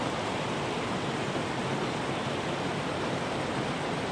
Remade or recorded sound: remade